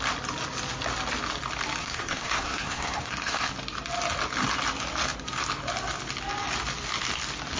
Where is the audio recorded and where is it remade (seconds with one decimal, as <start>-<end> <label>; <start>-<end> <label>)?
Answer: 0.0-1.8 recorded; 1.8-3.5 remade; 3.5-7.6 recorded